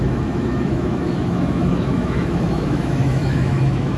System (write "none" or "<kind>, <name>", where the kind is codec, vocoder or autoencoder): autoencoder, DAC-VAE